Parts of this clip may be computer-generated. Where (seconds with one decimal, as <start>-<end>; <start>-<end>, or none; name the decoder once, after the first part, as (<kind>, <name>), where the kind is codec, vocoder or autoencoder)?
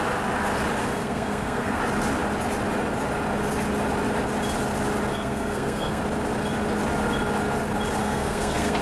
0.8-1.8 (codec, SNAC); 5.1-6.0; 8.0-8.8